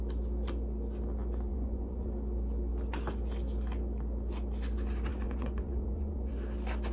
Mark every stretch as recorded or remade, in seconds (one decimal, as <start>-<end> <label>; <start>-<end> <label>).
0.0-1.5 recorded; 1.5-2.1 remade; 2.1-5.1 recorded; 5.1-6.3 remade; 6.3-6.9 recorded